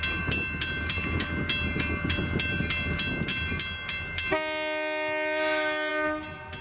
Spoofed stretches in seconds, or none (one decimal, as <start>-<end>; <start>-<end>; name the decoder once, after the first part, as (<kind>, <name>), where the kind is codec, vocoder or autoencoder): none